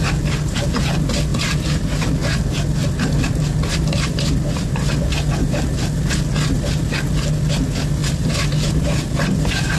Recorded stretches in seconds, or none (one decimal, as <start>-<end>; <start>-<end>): 0.0-1.3; 1.8-2.8; 4.9-9.8